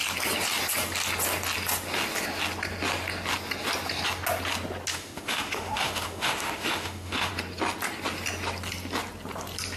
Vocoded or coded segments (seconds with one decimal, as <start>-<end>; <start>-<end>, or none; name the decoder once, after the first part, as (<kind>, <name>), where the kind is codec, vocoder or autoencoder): 4.9-7.3 (autoencoder, DAC-VAE)